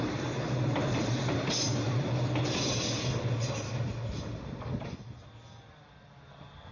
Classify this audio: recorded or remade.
recorded